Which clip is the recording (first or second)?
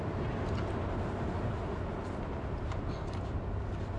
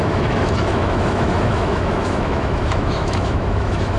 first